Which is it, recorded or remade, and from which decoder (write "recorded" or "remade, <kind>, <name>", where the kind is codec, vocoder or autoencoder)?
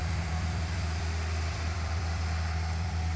remade, vocoder, BigVGAN v2